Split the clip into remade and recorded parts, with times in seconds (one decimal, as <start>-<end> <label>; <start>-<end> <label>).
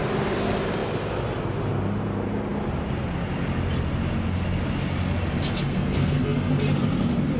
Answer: 0.0-5.7 recorded; 5.7-6.5 remade; 6.5-7.4 recorded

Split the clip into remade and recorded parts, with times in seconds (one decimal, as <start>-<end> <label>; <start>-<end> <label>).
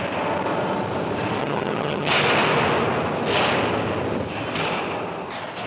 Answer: 0.0-1.4 recorded; 1.4-2.1 remade; 2.1-5.7 recorded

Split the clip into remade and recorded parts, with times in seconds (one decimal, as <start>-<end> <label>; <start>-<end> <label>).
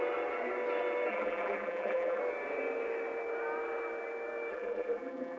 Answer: 0.0-1.1 recorded; 1.1-2.2 remade; 2.2-4.5 recorded; 4.5-5.4 remade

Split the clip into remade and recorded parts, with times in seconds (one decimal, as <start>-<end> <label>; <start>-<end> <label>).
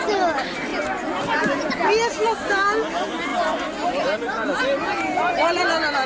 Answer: 0.0-6.1 recorded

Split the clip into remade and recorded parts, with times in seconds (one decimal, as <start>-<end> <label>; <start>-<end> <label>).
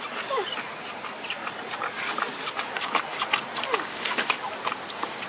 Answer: 0.0-3.9 recorded; 3.9-4.4 remade; 4.4-5.3 recorded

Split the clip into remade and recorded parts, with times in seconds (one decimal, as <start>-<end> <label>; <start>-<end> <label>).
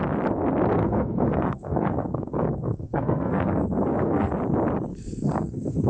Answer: 0.0-0.8 recorded; 0.8-4.3 remade; 4.3-4.9 recorded; 4.9-5.9 remade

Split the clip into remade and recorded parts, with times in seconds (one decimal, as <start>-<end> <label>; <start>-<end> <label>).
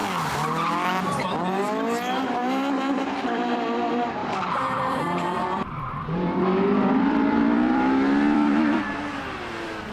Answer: 0.0-2.9 recorded; 2.9-9.9 remade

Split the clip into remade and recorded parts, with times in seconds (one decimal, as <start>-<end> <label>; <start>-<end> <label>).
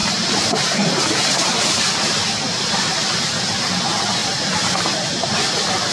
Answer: 0.0-0.8 remade; 0.8-2.2 recorded; 2.2-3.0 remade; 3.0-4.2 recorded; 4.2-5.4 remade; 5.4-5.9 recorded